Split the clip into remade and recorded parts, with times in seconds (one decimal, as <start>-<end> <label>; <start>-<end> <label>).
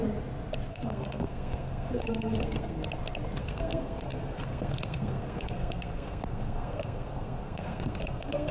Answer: 0.0-0.7 recorded; 0.7-2.8 remade; 2.8-3.4 recorded; 3.4-8.5 remade